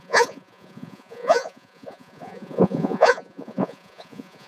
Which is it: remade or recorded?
remade